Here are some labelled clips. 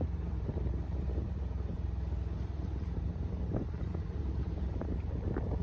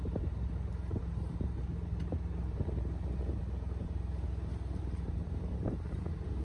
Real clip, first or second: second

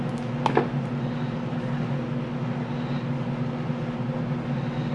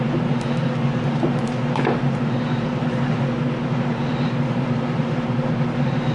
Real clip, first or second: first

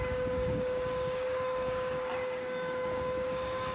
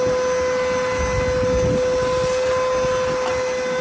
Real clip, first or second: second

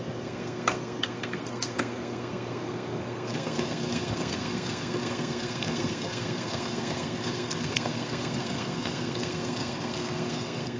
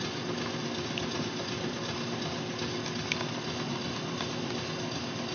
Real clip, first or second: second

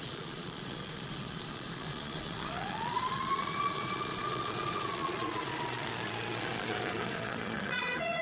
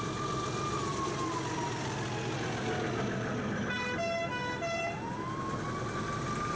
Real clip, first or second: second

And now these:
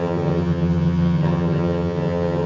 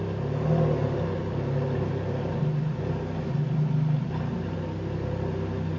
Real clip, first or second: second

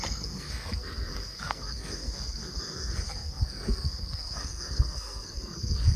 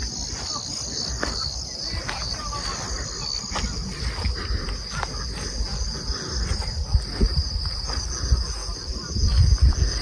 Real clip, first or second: second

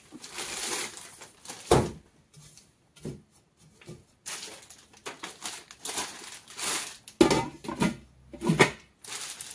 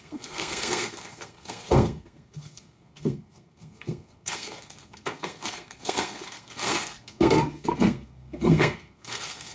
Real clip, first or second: first